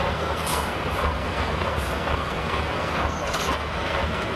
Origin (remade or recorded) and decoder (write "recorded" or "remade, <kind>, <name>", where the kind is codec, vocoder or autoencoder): remade, codec, SNAC